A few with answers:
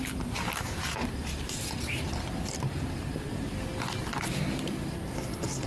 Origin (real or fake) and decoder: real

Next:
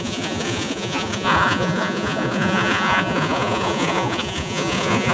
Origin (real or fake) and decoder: fake, vocoder, Vocos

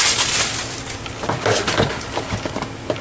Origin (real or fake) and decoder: real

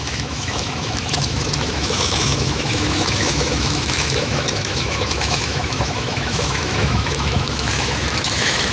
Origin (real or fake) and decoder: fake, autoencoder, DAC-VAE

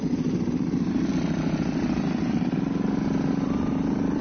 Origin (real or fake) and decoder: real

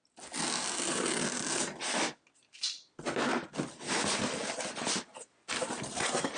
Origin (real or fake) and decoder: real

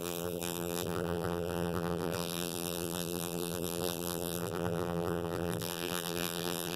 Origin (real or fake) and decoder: fake, vocoder, BigVGAN v2